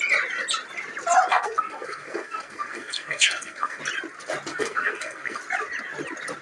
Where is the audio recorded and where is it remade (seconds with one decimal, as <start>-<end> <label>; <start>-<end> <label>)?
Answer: 0.0-1.3 recorded; 1.3-3.8 remade; 3.8-4.5 recorded; 4.5-5.4 remade; 5.4-6.4 recorded